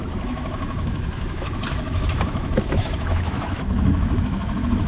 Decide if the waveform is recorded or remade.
remade